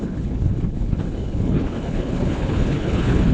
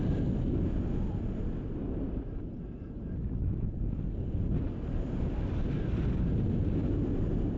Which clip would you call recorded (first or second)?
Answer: second